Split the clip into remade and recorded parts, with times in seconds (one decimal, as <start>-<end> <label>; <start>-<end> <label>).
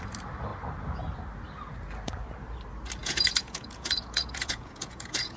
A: 0.0-3.0 recorded; 3.0-5.4 remade